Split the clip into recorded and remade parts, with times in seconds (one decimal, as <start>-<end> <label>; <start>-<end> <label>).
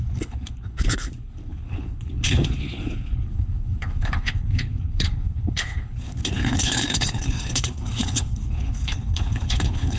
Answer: 0.0-10.0 remade